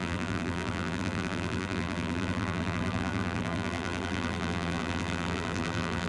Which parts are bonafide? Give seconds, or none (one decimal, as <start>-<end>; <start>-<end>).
none